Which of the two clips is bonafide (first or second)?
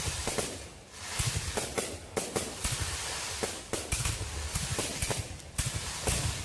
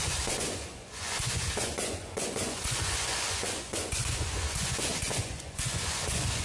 first